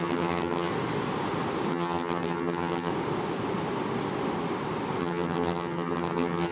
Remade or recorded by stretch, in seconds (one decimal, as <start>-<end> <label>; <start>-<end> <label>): 0.0-0.7 remade; 0.7-1.7 recorded; 1.7-2.9 remade; 2.9-5.0 recorded; 5.0-6.5 remade